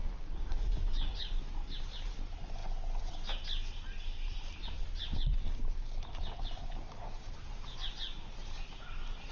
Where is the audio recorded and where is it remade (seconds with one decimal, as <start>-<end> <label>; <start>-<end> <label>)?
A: 0.0-1.4 remade; 1.4-9.3 recorded